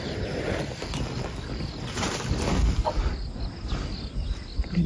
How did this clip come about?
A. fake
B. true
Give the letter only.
B